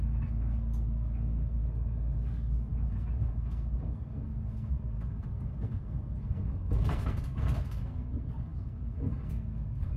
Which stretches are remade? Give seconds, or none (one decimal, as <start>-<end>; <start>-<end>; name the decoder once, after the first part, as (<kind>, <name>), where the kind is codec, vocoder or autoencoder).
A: 0.0-10.0 (codec, SNAC)